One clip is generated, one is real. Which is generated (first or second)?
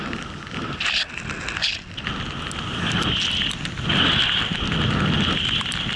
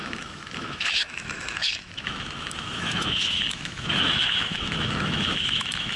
second